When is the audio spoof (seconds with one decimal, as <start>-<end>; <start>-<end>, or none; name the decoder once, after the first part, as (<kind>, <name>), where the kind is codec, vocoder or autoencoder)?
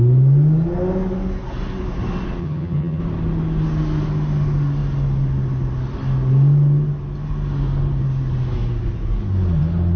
2.4-3.0 (vocoder, HiFi-GAN)